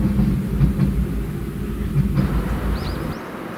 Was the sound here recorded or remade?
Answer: recorded